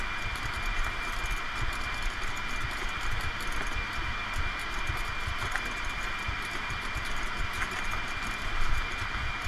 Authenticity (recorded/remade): recorded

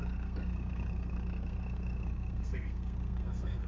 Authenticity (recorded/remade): remade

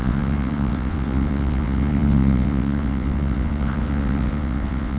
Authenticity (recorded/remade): remade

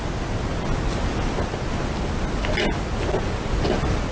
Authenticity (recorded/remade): recorded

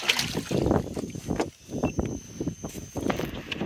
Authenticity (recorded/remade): recorded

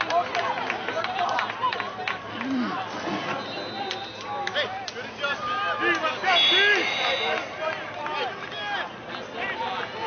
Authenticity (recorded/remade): recorded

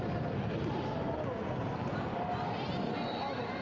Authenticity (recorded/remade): recorded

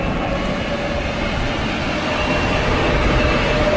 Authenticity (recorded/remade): recorded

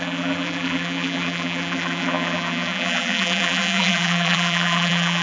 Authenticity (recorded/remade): remade